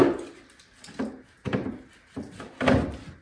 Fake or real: real